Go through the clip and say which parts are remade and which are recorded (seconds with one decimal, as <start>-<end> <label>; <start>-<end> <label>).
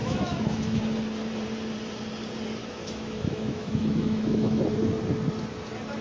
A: 0.0-0.8 remade; 0.8-2.6 recorded; 2.6-4.6 remade; 4.6-6.0 recorded